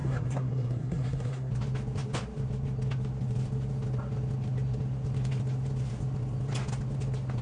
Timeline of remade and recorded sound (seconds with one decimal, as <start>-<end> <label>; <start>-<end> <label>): 0.0-1.5 remade; 1.5-7.4 recorded